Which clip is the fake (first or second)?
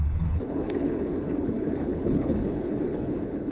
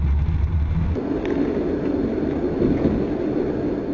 first